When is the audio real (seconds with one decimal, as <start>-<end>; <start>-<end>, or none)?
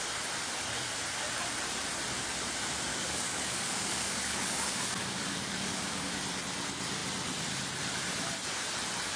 0.0-2.9; 6.2-9.2